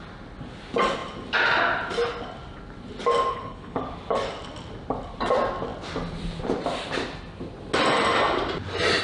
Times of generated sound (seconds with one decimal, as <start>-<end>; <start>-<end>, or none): 3.3-3.8